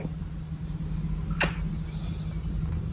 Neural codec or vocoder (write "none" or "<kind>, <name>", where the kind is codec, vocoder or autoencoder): none